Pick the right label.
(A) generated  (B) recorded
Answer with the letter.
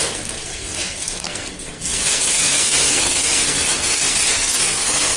A